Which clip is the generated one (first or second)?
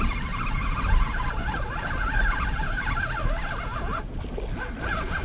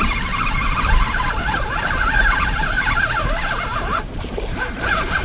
second